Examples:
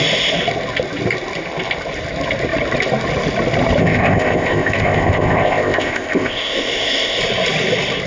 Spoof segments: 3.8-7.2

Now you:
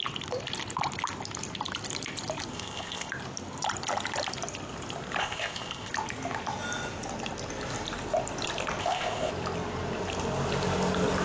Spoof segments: 2.5-3.1; 5.2-5.9; 8.8-9.3